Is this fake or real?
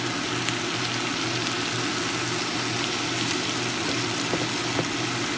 real